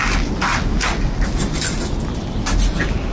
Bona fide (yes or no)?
yes